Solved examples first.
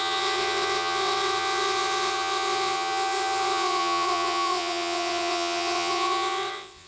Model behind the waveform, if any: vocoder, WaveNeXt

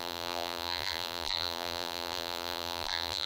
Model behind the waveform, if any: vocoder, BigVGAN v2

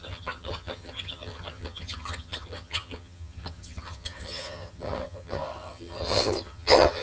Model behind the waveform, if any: vocoder, HiFi-GAN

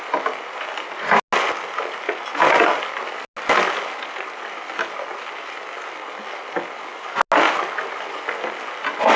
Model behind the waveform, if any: none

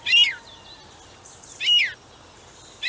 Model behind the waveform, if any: none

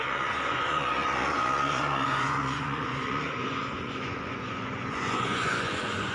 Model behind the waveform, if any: vocoder, Vocos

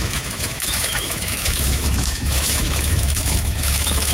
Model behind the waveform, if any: autoencoder, DAC-VAE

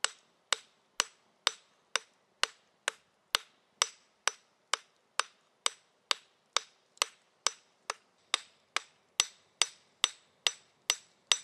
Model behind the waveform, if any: none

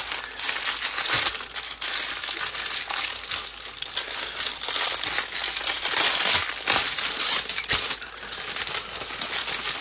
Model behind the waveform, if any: none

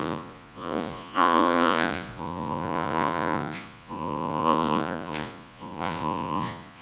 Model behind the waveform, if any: vocoder, Vocos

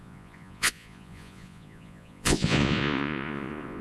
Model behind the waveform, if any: vocoder, Vocos